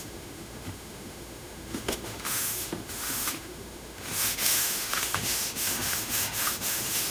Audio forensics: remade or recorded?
remade